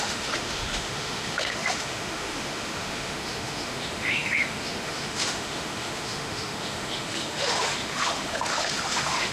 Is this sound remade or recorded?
remade